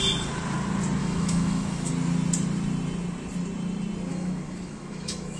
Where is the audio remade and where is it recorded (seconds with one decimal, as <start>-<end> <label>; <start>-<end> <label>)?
0.0-1.0 recorded; 1.0-1.9 remade; 1.9-4.1 recorded; 4.1-5.4 remade

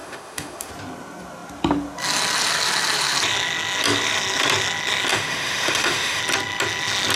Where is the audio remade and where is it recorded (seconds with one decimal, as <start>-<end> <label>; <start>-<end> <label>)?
0.0-0.7 remade; 0.7-5.1 recorded; 5.1-6.2 remade; 6.2-7.2 recorded

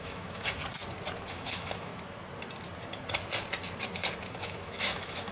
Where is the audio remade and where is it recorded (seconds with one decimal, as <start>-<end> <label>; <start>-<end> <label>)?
0.0-0.6 remade; 0.6-1.3 recorded; 1.3-1.9 remade; 1.9-4.3 recorded; 4.3-5.3 remade

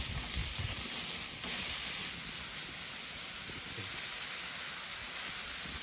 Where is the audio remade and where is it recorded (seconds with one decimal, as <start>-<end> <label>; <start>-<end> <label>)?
0.0-5.8 recorded

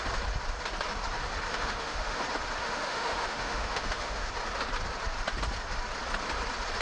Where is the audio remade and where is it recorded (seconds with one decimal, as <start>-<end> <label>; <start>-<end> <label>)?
0.0-1.5 recorded; 1.5-2.2 remade; 2.2-2.6 recorded; 2.6-4.3 remade; 4.3-6.8 recorded

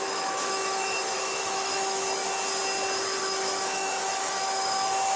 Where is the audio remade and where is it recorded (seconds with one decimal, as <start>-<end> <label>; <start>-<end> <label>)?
0.0-2.2 remade; 2.2-3.2 recorded; 3.2-5.2 remade

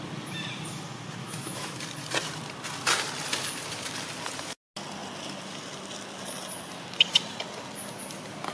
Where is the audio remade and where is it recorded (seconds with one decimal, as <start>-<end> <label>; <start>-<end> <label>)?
0.0-1.2 recorded; 1.2-1.8 remade; 1.8-8.5 recorded